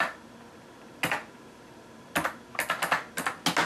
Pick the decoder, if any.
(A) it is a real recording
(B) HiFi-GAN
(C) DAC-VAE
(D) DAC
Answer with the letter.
A